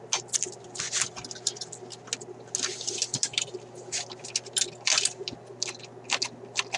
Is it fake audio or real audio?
real